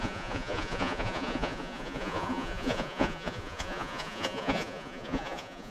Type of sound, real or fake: fake